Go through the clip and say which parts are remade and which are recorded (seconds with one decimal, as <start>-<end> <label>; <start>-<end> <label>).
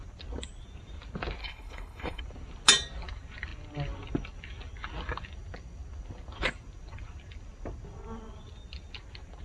0.0-1.4 recorded; 1.4-2.2 remade; 2.2-9.4 recorded